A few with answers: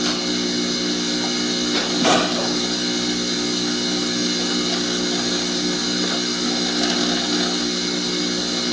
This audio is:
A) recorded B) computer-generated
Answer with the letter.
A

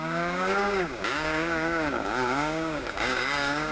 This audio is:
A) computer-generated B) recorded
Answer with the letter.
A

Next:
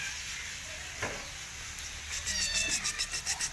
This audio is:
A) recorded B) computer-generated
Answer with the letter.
B